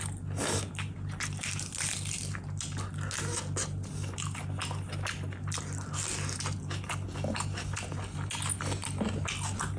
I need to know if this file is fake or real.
real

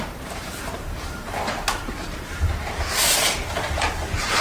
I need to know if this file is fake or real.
fake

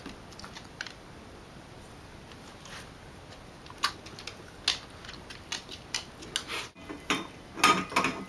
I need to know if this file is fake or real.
real